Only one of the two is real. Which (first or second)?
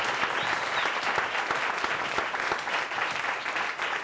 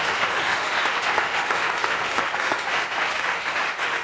first